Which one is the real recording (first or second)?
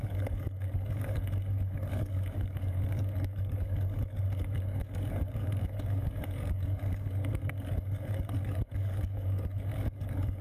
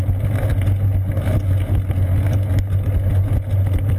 second